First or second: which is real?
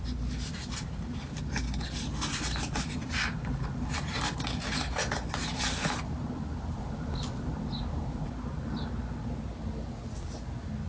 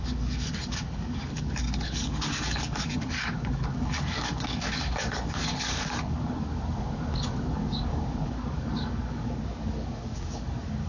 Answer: first